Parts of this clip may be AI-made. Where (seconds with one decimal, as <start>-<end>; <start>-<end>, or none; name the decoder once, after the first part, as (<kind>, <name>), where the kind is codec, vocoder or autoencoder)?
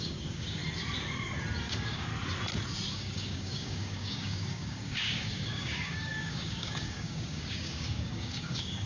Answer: 0.0-0.6 (codec, DAC); 1.6-2.1; 2.9-8.9